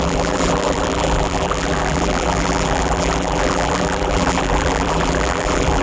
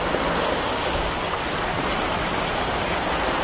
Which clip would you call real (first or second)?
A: second